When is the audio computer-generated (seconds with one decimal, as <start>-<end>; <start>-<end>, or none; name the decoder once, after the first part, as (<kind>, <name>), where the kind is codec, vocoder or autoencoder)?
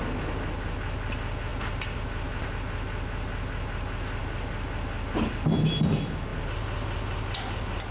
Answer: none